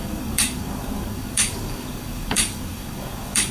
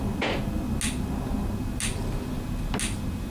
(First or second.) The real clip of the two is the second